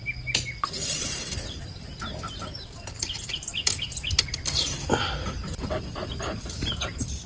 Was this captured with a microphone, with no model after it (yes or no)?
yes